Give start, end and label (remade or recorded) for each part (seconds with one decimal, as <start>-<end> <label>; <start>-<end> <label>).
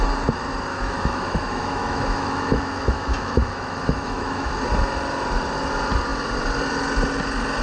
0.0-0.7 recorded; 0.7-4.5 remade; 4.5-7.6 recorded